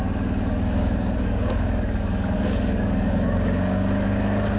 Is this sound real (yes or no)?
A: no